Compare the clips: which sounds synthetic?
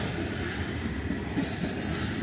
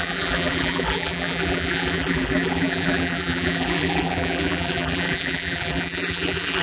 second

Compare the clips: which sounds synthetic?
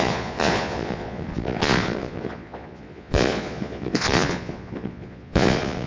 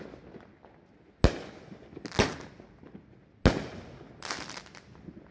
first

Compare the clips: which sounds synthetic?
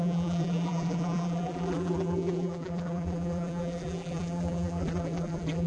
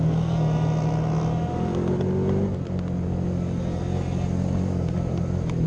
first